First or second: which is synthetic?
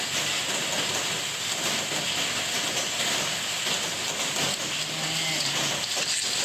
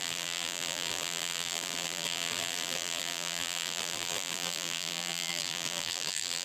second